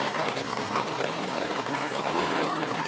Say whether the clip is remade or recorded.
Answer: remade